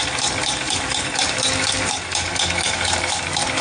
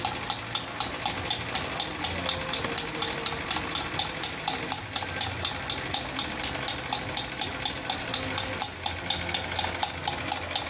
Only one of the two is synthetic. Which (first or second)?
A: first